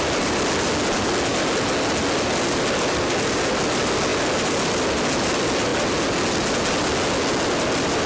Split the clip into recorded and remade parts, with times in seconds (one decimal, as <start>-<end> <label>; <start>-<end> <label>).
0.0-8.1 recorded